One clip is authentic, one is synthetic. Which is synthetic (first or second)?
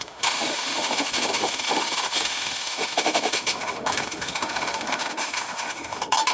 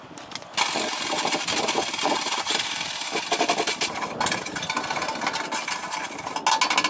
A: first